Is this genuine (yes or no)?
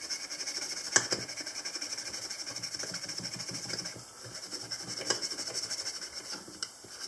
yes